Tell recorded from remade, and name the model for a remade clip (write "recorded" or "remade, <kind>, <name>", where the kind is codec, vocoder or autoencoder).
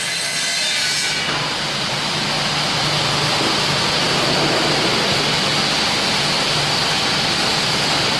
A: recorded